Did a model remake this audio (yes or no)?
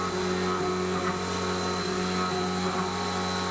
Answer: no